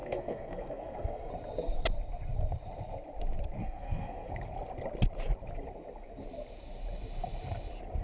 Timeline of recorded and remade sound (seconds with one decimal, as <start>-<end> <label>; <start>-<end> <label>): 0.0-1.3 remade; 1.3-3.6 recorded; 3.6-4.3 remade; 4.3-8.0 recorded